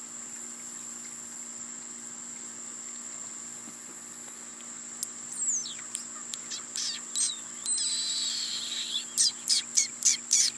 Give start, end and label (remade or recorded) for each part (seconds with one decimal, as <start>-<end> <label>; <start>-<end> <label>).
0.0-10.6 recorded